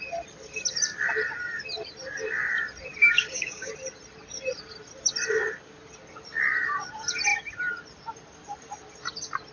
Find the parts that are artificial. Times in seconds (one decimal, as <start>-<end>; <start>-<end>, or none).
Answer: 3.0-3.7